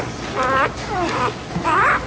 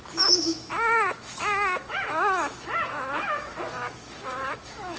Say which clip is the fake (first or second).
second